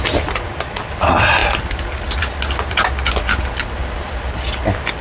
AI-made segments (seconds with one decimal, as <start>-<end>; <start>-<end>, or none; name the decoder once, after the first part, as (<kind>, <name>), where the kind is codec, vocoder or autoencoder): none